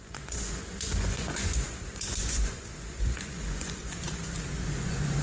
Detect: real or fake fake